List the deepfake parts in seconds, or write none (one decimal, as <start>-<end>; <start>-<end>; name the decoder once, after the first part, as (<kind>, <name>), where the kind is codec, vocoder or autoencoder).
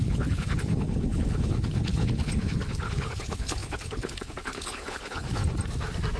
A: 0.0-5.4 (codec, HILCodec)